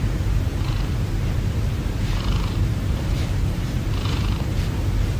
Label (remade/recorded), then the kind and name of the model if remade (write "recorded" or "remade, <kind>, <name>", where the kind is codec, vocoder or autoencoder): remade, vocoder, BigVGAN v2